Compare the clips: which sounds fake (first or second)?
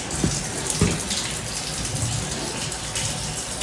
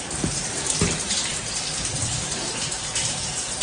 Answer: second